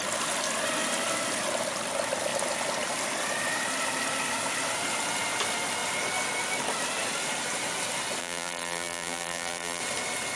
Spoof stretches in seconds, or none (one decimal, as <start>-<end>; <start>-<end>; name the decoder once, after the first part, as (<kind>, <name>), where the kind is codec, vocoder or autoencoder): 8.2-9.8 (vocoder, BigVGAN v2)